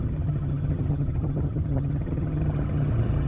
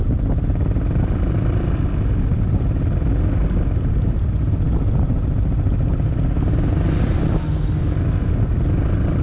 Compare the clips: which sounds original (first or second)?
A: second